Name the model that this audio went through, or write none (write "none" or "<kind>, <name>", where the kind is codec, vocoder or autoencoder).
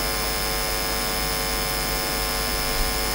none